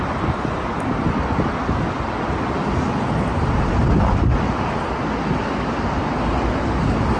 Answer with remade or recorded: recorded